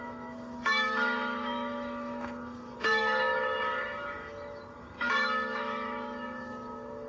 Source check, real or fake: fake